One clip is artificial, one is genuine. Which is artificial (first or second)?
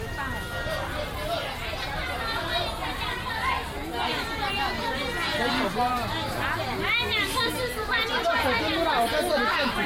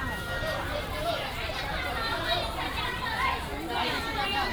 second